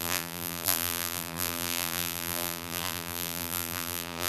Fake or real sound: fake